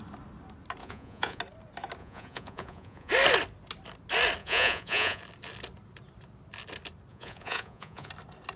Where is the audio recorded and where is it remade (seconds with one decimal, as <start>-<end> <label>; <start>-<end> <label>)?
0.0-0.8 recorded; 0.8-1.4 remade; 1.4-2.0 recorded; 2.0-3.1 remade; 3.1-4.4 recorded; 4.4-5.2 remade; 5.2-7.1 recorded; 7.1-8.1 remade; 8.1-8.6 recorded